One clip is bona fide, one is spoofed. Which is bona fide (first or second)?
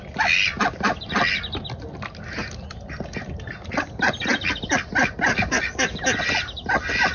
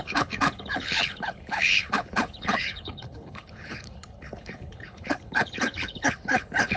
first